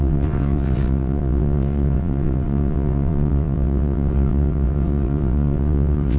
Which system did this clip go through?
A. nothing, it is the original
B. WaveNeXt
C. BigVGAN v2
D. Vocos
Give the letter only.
B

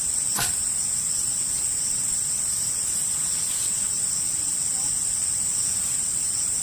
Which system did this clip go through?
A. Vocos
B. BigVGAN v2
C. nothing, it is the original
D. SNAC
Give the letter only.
C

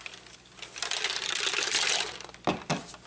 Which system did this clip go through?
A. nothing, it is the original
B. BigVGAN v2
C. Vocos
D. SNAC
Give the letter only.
A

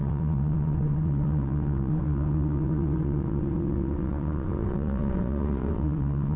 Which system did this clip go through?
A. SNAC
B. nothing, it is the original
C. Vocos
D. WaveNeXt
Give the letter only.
D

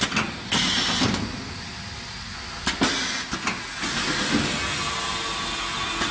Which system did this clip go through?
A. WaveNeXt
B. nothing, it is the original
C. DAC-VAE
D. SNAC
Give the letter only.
B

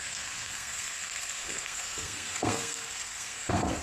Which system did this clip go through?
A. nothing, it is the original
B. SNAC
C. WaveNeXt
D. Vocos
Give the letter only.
B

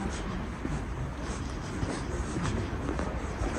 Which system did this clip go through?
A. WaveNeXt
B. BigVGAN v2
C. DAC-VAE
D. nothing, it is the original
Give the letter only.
D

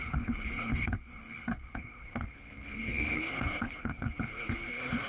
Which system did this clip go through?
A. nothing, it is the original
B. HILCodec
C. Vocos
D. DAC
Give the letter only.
B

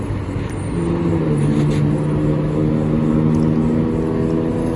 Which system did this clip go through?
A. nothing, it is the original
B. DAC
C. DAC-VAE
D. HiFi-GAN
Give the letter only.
A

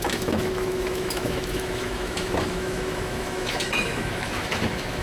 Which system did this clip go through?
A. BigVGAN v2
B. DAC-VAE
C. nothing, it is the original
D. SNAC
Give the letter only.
B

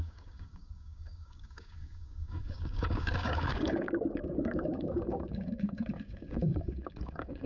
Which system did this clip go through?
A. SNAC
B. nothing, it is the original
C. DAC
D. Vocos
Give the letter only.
C